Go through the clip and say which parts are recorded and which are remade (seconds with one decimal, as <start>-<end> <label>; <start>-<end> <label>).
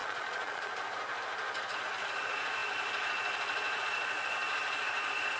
0.0-0.7 remade; 0.7-5.4 recorded